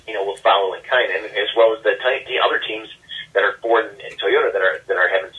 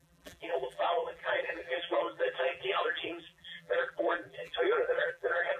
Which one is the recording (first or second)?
first